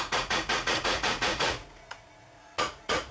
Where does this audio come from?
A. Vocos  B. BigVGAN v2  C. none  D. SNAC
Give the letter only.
A